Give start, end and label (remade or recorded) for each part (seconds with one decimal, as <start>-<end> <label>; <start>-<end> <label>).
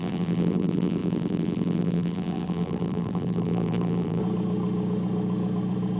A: 0.0-4.2 remade; 4.2-6.0 recorded